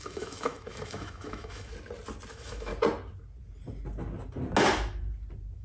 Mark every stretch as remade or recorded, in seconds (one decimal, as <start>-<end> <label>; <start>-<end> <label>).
0.0-1.7 remade; 1.7-2.3 recorded; 2.3-2.7 remade; 2.7-5.6 recorded